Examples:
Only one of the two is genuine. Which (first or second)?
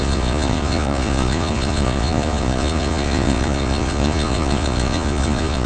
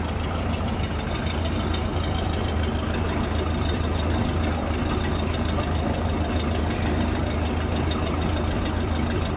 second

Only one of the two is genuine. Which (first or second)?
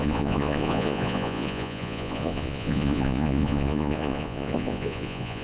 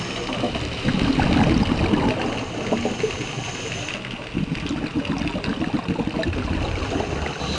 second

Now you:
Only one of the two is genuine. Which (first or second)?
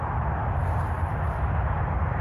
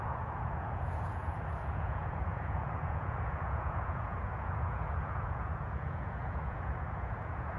first